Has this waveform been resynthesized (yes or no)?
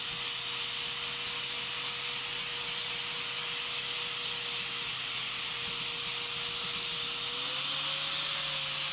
no